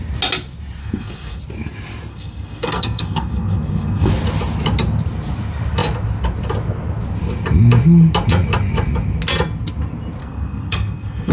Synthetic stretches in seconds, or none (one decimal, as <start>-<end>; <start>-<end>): 0.8-1.4; 2.1-4.1; 10.2-11.3